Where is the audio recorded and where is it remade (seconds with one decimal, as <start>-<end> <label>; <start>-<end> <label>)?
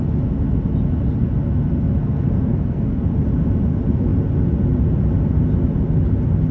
0.0-2.0 recorded; 2.0-3.0 remade; 3.0-6.5 recorded